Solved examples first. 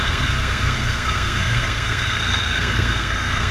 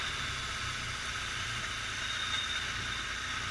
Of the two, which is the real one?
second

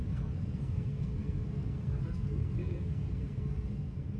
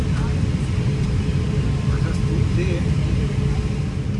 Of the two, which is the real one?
second